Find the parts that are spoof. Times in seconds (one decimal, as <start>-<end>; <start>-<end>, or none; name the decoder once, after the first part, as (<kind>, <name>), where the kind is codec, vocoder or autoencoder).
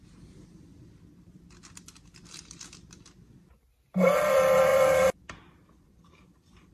0.0-6.7 (vocoder, BigVGAN v2)